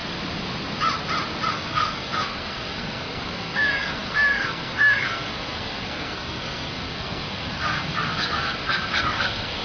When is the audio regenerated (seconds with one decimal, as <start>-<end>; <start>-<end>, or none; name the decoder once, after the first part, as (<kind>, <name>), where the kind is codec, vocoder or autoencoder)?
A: 1.5-9.6 (codec, SNAC)